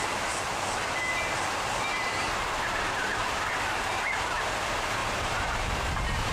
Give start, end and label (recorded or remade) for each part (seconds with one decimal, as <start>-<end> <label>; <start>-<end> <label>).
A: 0.0-1.9 recorded; 1.9-3.5 remade; 3.5-5.0 recorded; 5.0-5.7 remade; 5.7-6.3 recorded